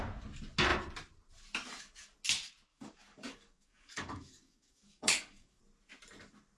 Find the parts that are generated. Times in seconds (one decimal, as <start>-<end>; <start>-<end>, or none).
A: 2.7-5.6